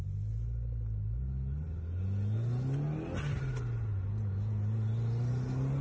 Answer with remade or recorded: recorded